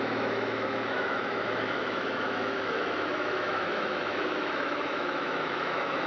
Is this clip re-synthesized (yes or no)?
yes